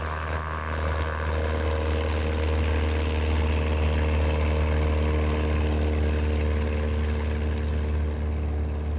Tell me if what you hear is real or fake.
real